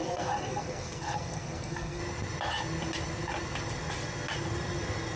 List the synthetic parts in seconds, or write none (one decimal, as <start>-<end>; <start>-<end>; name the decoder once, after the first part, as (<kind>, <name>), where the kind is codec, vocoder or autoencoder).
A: 0.0-2.0 (codec, SNAC)